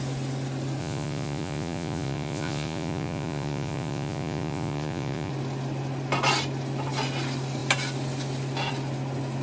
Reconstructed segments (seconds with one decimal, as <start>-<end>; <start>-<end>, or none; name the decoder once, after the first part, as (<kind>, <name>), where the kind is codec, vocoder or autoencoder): 0.8-5.3 (vocoder, Vocos)